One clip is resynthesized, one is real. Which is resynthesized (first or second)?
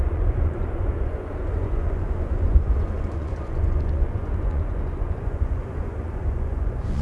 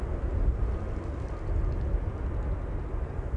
first